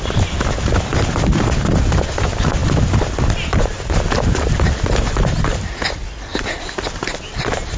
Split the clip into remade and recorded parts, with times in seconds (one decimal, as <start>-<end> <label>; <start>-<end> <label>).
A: 0.0-7.8 recorded

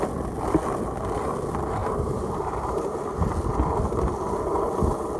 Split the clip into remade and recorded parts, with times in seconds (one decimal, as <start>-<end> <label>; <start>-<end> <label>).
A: 0.0-1.8 recorded; 1.8-3.0 remade; 3.0-5.2 recorded

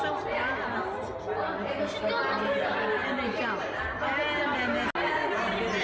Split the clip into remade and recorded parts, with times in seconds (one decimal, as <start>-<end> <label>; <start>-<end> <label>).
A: 0.0-5.8 recorded

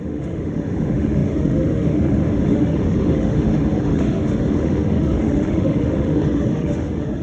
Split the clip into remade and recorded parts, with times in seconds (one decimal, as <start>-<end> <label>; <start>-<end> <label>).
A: 0.0-7.2 remade

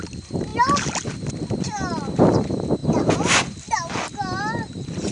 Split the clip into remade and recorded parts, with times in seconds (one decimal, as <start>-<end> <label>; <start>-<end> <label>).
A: 0.0-5.1 recorded

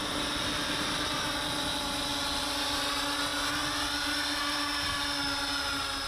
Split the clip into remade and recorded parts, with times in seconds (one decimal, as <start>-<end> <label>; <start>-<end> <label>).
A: 0.0-6.1 recorded

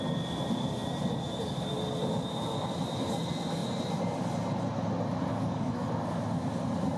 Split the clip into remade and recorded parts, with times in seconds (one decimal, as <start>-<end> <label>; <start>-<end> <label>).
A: 0.0-5.3 recorded; 5.3-5.9 remade; 5.9-7.0 recorded